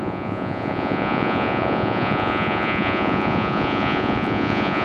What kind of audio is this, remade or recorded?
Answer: remade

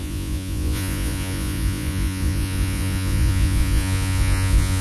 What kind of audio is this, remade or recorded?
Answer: remade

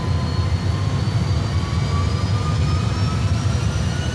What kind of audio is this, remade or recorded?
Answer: recorded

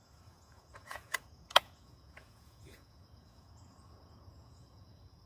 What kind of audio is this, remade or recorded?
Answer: remade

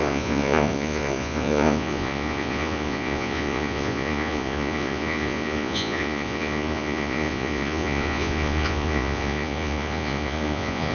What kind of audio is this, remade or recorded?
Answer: remade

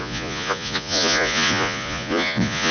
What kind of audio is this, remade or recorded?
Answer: remade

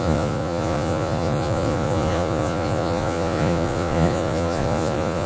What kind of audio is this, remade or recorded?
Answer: remade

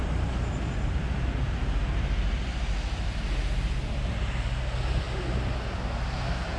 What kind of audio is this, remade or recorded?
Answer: recorded